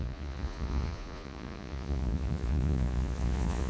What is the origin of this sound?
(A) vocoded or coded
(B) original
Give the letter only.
A